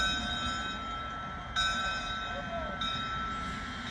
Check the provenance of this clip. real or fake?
real